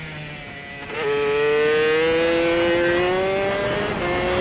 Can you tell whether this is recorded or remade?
recorded